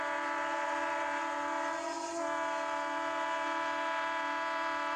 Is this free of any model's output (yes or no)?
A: yes